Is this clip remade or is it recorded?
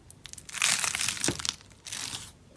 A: recorded